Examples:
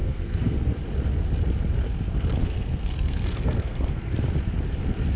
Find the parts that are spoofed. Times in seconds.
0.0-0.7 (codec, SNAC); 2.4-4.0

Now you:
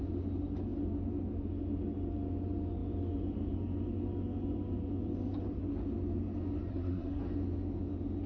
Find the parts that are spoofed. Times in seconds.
6.7-7.2 (codec, SNAC)

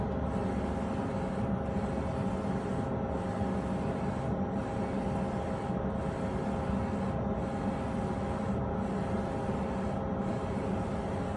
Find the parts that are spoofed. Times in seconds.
none

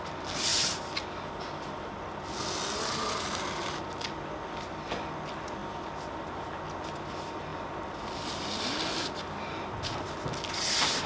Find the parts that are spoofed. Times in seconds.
none

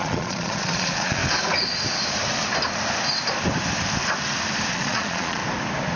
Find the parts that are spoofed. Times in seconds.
0.0-1.2 (vocoder, Vocos); 4.7-5.4